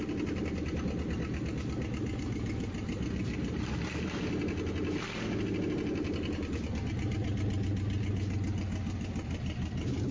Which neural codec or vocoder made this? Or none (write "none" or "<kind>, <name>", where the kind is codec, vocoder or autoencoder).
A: none